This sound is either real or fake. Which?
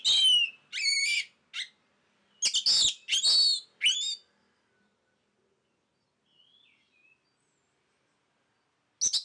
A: real